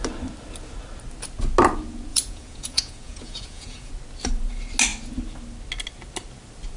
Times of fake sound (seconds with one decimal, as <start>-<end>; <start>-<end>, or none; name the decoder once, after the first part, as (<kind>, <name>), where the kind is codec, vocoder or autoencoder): 2.1-3.9 (vocoder, Vocos)